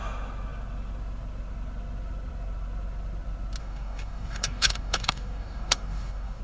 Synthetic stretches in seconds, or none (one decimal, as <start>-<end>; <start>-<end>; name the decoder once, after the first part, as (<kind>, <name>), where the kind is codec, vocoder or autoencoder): 3.6-6.4 (codec, DAC)